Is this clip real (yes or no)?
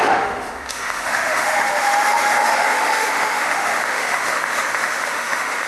no